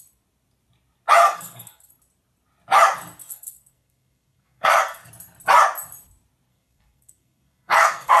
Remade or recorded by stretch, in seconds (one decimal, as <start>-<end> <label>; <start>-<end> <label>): 0.0-1.2 recorded; 1.2-1.9 remade; 1.9-3.2 recorded; 3.2-5.1 remade; 5.1-6.5 recorded; 6.5-8.2 remade